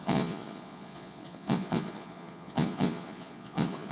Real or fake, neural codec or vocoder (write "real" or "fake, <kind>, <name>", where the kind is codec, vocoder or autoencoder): fake, vocoder, Vocos